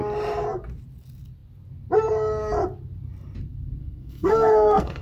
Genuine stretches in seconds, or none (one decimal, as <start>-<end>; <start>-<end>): 0.0-3.8

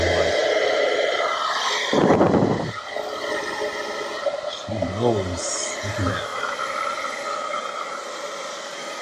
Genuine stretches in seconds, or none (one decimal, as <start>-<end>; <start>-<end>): 0.0-9.0

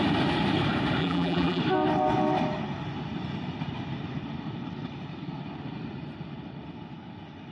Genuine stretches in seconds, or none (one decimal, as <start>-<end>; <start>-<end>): 0.0-1.0; 1.6-7.5

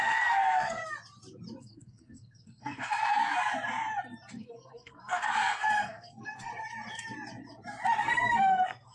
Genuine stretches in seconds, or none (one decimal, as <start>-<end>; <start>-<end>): 0.8-1.6; 3.0-4.3; 6.5-8.0

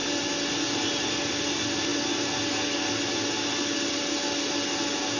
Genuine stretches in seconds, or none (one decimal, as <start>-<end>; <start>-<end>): 0.0-5.2

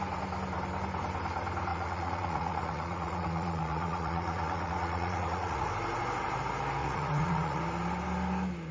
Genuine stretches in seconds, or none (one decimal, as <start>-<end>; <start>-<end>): 0.0-1.7; 5.7-6.8; 7.6-8.7

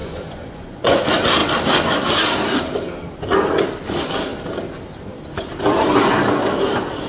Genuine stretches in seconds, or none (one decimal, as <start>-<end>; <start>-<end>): 1.0-7.1